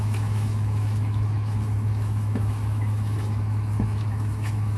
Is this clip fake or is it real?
fake